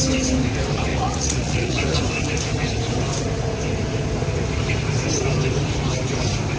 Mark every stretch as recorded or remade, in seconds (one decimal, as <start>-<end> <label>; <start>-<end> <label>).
0.0-0.9 recorded; 0.9-2.0 remade; 2.0-6.6 recorded

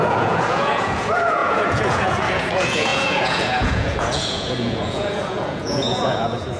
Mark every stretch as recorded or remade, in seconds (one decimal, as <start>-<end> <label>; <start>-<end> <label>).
0.0-6.6 remade

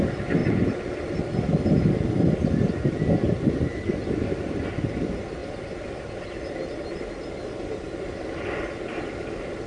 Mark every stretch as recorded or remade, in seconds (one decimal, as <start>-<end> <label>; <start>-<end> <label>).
0.0-5.4 recorded; 5.4-9.7 remade

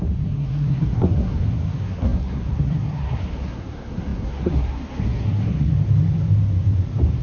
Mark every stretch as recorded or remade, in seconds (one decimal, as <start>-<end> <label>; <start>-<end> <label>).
0.0-5.7 remade; 5.7-7.2 recorded

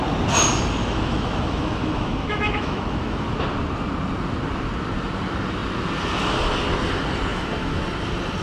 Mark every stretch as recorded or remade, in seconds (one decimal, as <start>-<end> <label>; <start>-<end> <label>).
0.0-0.8 recorded; 0.8-3.3 remade; 3.3-7.3 recorded; 7.3-7.8 remade; 7.8-8.4 recorded

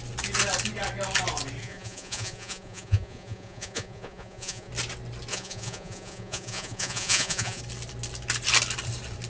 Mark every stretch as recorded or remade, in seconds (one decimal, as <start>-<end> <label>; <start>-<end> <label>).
0.0-1.6 recorded; 1.6-4.7 remade; 4.7-5.3 recorded; 5.3-7.6 remade; 7.6-9.3 recorded